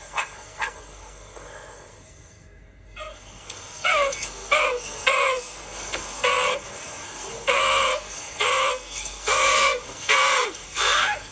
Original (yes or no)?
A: no